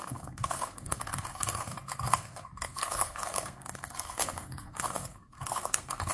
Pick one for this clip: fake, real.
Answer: fake